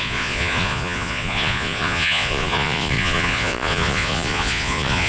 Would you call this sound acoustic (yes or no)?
no